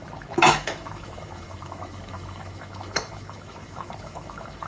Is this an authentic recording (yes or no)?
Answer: no